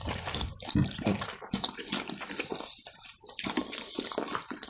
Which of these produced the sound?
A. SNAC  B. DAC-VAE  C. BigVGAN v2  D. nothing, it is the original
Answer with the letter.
D